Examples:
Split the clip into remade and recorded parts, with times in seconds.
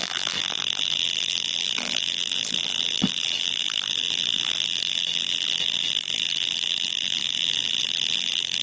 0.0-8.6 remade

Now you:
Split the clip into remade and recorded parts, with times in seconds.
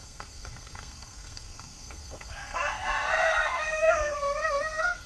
0.0-5.1 remade